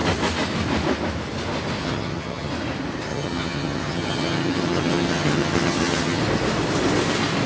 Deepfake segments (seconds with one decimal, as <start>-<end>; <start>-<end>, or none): 1.8-2.5; 3.1-6.2